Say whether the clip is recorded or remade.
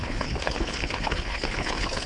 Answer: remade